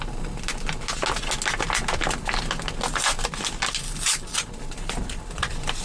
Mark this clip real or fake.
real